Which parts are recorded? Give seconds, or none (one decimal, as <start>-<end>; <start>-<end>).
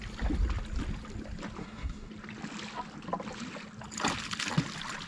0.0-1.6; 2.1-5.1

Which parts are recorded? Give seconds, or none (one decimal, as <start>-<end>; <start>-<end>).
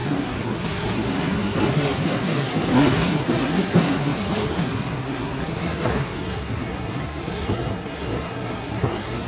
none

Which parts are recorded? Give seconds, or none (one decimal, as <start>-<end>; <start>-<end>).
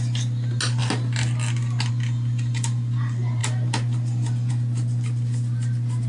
0.0-6.1